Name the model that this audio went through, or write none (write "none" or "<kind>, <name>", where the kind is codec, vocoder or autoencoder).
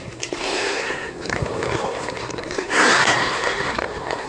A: codec, SNAC